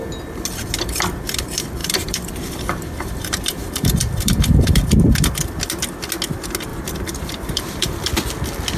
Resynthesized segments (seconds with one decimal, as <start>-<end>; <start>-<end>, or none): 1.8-5.3; 6.7-8.1